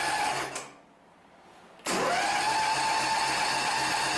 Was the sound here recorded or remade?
recorded